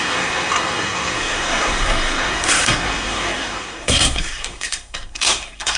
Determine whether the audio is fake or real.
fake